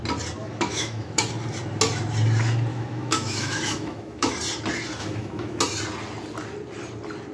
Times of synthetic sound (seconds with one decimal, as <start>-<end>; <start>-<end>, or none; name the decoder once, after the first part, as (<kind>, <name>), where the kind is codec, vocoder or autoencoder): 0.4-1.2 (autoencoder, DAC-VAE); 2.7-4.3; 5.0-5.6